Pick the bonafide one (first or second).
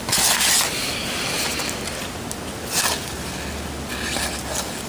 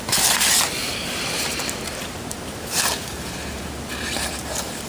first